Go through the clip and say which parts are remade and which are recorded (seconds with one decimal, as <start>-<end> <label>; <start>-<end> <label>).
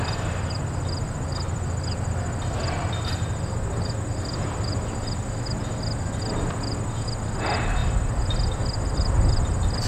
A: 0.0-9.9 recorded